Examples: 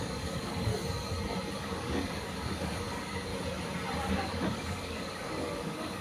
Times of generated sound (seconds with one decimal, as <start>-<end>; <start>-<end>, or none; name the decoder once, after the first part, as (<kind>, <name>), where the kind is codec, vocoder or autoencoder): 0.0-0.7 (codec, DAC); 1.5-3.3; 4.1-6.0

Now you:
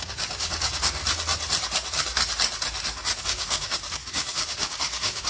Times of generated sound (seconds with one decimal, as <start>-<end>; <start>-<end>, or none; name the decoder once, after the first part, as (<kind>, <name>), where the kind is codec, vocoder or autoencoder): 0.0-1.0 (codec, DAC); 3.2-5.3

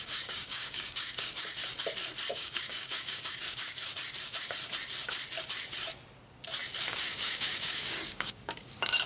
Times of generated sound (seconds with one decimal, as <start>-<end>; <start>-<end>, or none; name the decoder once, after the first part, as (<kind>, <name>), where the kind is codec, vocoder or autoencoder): 0.0-1.6 (codec, DAC); 2.3-3.9; 6.9-9.1